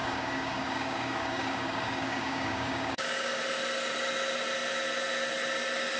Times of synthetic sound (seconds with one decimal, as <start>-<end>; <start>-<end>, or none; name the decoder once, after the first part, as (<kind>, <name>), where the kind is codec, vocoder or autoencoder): 0.0-3.4 (codec, DAC)